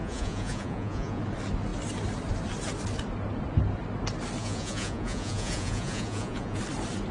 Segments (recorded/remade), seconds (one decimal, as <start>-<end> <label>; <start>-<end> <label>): 0.0-1.2 remade; 1.2-4.4 recorded; 4.4-6.6 remade; 6.6-7.1 recorded